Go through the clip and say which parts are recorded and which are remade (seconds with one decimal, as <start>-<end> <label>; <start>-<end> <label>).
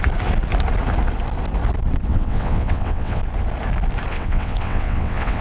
0.0-2.1 recorded; 2.1-3.2 remade; 3.2-4.1 recorded; 4.1-5.4 remade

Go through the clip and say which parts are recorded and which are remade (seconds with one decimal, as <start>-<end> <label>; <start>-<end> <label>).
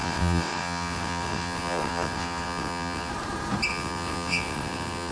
0.0-3.1 remade; 3.1-3.7 recorded; 3.7-5.1 remade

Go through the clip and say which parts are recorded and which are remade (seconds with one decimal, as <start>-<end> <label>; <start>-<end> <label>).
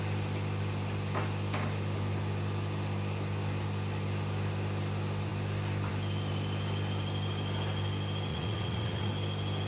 0.0-8.3 recorded; 8.3-9.1 remade; 9.1-9.7 recorded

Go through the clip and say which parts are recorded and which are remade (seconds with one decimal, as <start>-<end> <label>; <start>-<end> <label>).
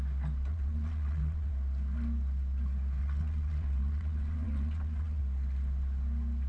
0.0-0.5 recorded; 0.5-1.5 remade; 1.5-3.0 recorded; 3.0-5.2 remade; 5.2-6.5 recorded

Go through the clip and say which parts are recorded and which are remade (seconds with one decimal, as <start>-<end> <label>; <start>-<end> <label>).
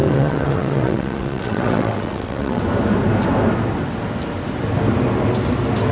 0.0-2.6 remade; 2.6-5.9 recorded